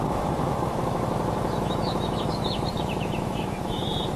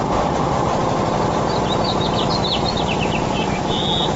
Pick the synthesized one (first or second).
first